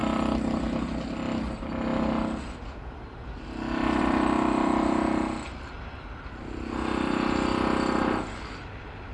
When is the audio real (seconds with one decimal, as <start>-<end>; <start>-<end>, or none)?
0.0-9.1